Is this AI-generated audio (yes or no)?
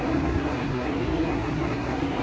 yes